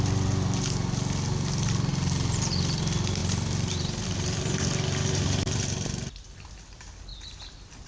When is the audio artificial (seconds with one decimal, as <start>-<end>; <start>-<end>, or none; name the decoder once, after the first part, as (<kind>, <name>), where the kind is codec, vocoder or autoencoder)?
3.2-6.5 (vocoder, BigVGAN v2); 7.1-7.9